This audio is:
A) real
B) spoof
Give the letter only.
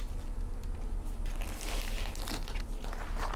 A